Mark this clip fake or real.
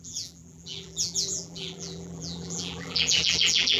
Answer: fake